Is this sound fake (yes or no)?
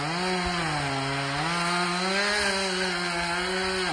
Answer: no